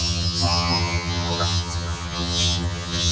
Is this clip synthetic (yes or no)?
yes